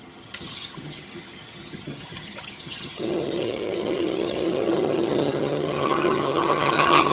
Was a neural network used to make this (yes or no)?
yes